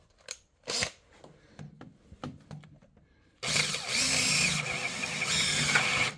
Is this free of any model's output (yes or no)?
yes